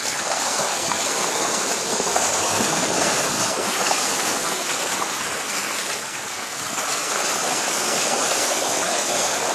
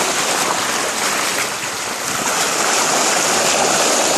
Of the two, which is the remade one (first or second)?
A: first